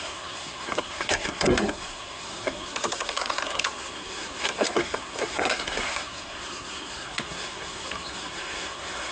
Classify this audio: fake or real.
fake